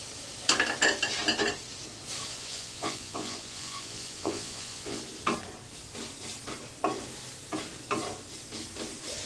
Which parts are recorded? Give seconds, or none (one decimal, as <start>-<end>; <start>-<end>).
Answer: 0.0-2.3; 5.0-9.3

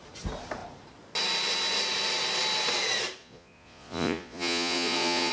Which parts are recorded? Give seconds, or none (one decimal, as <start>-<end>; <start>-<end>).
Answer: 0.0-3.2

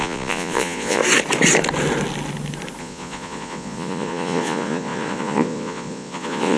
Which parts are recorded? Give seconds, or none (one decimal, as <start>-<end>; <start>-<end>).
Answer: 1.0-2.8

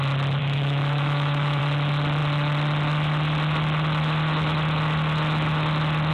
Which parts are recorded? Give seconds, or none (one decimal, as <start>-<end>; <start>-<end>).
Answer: 0.0-0.4; 1.6-6.1

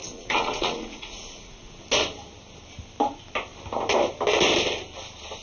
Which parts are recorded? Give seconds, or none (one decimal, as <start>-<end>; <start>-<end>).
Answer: 1.8-5.4